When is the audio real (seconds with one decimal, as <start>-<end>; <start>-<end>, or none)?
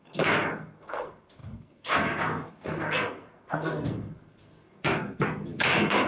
none